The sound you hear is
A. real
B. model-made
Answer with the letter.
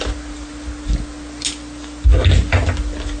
A